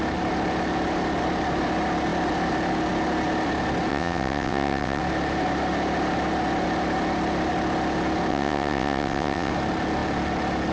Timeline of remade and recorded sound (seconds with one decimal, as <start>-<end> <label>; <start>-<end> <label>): 0.0-3.9 recorded; 3.9-5.0 remade; 5.0-8.3 recorded; 8.3-9.5 remade; 9.5-10.7 recorded

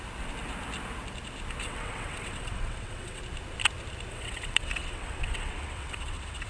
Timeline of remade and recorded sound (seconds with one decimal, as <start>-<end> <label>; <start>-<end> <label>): 0.0-1.6 recorded; 1.6-3.2 remade; 3.2-4.1 recorded; 4.1-6.5 remade

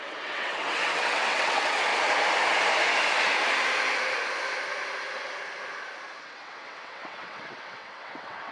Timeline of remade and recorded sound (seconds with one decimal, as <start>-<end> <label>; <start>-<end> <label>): 0.0-1.9 remade; 1.9-6.2 recorded; 6.2-8.5 remade

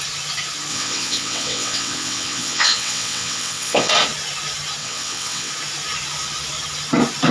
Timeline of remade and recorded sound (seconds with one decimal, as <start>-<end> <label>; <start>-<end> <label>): 0.0-0.7 recorded; 0.7-3.9 remade; 3.9-4.8 recorded; 4.8-5.5 remade; 5.5-7.3 recorded

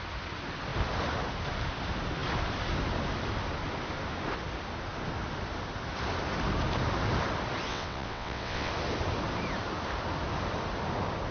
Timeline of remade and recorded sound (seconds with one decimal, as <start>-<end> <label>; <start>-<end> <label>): 0.0-7.7 recorded; 7.7-8.7 remade; 8.7-11.3 recorded

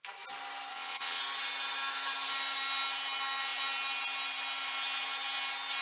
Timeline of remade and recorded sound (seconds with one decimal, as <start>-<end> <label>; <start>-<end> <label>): 0.0-0.7 recorded; 0.7-1.2 remade; 1.2-5.8 recorded